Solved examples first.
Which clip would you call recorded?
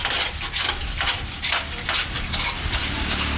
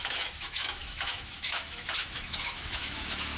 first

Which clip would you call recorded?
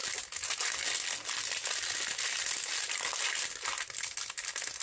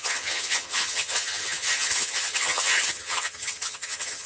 first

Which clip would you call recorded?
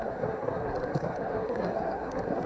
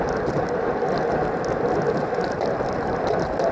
second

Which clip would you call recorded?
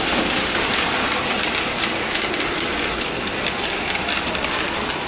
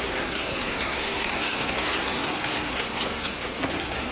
first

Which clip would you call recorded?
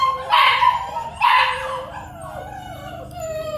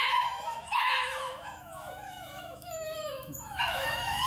first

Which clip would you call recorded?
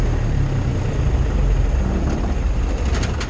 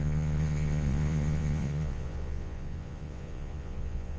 first